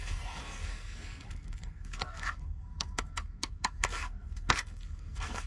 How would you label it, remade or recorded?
remade